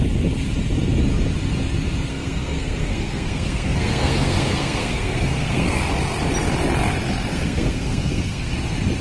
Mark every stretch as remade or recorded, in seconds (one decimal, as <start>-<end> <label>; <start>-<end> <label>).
0.0-2.1 recorded; 2.1-5.8 remade; 5.8-7.3 recorded; 7.3-8.5 remade; 8.5-9.0 recorded